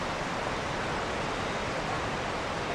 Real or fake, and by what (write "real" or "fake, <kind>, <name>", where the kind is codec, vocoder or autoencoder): real